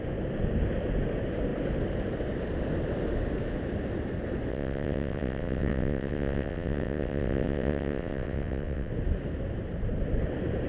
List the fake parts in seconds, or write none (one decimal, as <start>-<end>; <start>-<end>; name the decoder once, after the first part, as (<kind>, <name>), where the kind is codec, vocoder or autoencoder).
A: 4.5-8.9 (vocoder, WaveNeXt)